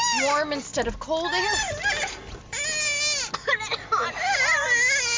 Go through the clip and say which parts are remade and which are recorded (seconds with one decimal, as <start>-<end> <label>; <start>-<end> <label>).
0.0-5.2 recorded